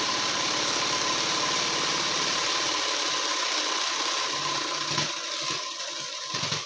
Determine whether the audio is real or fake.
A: real